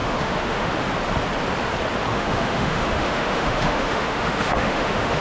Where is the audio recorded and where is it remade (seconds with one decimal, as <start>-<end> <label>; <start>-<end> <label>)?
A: 0.0-0.7 remade; 0.7-2.1 recorded; 2.1-5.2 remade